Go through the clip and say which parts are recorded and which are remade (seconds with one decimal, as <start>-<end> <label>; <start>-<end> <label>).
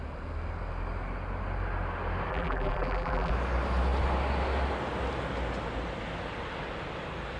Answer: 0.0-2.3 recorded; 2.3-3.3 remade; 3.3-7.4 recorded